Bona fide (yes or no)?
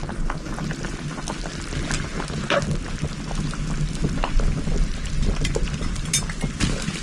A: yes